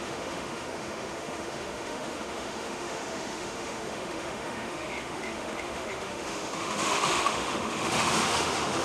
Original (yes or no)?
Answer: no